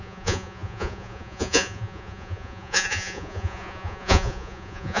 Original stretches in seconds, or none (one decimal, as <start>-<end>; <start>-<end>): none